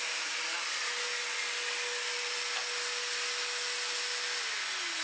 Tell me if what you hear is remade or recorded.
recorded